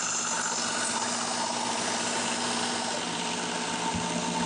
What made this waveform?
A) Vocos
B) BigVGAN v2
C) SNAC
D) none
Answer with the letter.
D